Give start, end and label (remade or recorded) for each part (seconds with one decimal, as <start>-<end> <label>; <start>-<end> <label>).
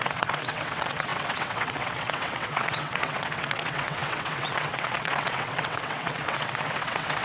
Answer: 0.0-7.2 remade